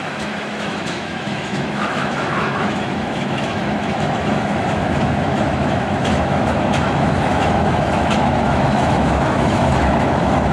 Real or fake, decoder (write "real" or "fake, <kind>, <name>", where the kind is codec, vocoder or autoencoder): fake, autoencoder, DAC-VAE